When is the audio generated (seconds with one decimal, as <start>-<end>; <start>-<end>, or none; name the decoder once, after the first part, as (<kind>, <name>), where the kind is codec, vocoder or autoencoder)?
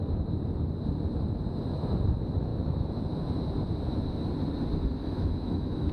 2.5-3.0 (autoencoder, DAC-VAE); 5.0-5.9